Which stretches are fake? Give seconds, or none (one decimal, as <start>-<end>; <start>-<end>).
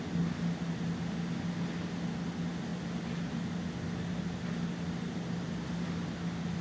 none